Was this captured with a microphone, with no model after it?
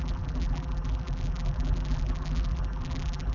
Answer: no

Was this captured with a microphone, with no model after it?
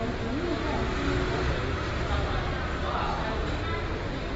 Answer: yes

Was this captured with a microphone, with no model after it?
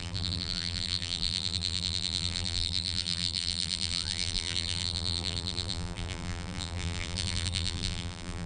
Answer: no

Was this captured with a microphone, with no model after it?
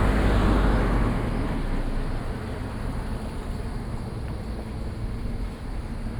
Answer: yes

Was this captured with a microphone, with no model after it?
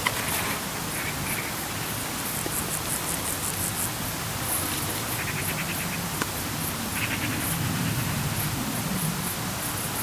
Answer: yes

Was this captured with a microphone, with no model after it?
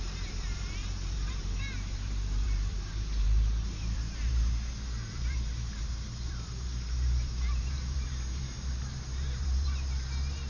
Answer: no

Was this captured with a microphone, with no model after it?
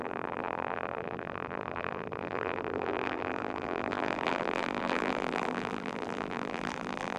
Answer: no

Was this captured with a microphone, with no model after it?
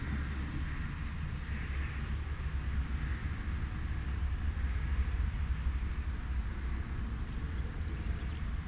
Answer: yes